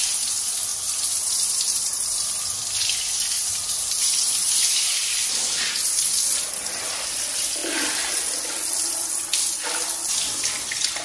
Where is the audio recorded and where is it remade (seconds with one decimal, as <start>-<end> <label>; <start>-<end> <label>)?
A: 0.0-5.0 recorded; 5.0-5.6 remade; 5.6-11.0 recorded